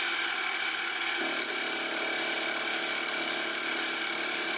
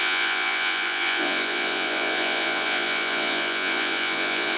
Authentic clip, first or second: first